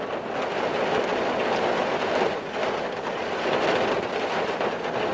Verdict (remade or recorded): recorded